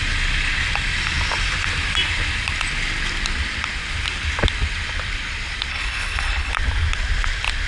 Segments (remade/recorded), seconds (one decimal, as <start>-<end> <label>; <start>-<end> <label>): 0.0-5.7 recorded; 5.7-6.5 remade; 6.5-7.7 recorded